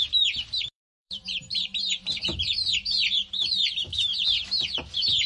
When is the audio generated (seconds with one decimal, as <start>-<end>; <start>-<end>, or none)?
0.0-4.1

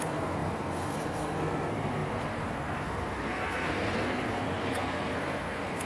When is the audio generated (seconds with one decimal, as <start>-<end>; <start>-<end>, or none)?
0.0-5.9

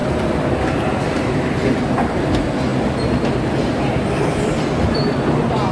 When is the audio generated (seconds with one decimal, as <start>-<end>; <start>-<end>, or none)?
none

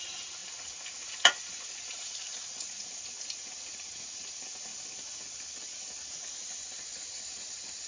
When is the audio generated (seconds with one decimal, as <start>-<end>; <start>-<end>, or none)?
0.0-4.7; 6.1-7.9